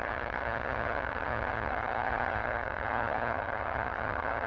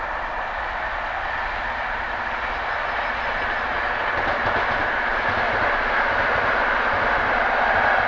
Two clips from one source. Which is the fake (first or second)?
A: first